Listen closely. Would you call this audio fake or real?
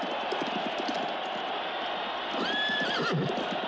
real